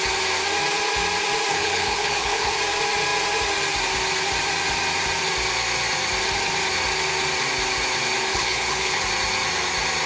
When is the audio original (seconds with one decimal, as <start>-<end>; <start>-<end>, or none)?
0.0-1.5; 2.6-8.3; 9.0-10.1